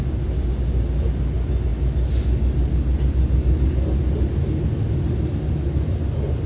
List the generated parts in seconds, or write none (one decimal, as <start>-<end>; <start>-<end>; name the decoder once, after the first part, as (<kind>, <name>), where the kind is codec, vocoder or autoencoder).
none